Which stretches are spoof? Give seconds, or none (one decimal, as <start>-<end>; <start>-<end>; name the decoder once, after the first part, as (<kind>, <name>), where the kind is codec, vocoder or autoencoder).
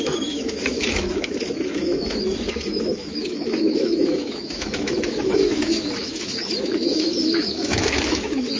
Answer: 0.0-8.6 (autoencoder, DAC-VAE)